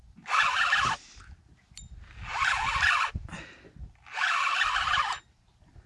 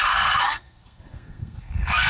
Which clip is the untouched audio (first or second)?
first